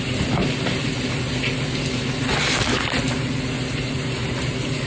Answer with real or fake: real